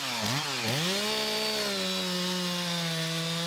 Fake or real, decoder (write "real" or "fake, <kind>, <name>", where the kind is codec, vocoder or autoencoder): real